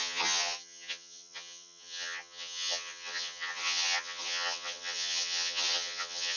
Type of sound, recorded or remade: remade